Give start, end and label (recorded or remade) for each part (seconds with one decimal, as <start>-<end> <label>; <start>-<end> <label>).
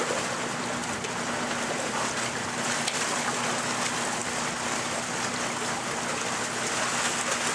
0.0-7.5 recorded